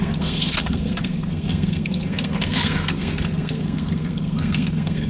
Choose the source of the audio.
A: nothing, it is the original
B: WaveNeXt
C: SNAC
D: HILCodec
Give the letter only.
C